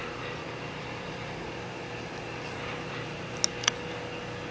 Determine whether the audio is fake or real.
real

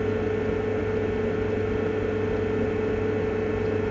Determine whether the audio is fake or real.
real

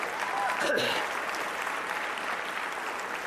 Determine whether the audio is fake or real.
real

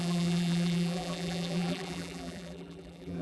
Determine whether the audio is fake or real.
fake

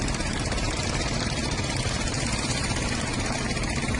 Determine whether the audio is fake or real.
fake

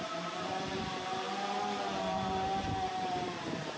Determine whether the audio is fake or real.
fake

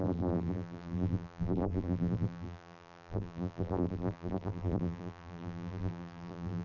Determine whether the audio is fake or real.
fake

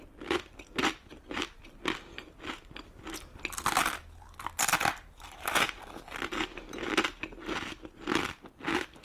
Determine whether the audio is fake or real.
real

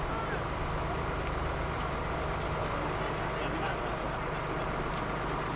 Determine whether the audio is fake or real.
real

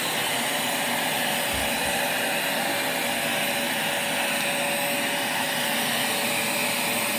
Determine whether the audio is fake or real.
real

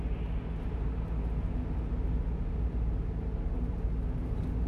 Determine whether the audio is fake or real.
real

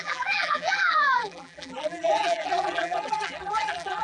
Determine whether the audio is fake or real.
fake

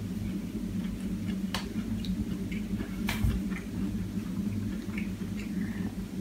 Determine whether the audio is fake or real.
real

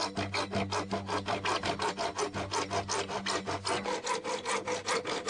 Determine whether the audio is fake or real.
real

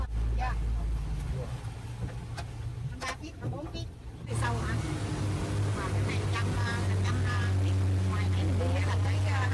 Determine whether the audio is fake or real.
real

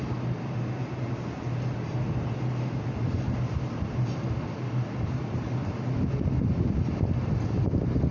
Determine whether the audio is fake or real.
real